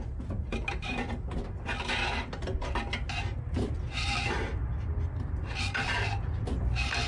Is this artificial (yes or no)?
no